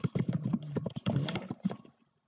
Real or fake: fake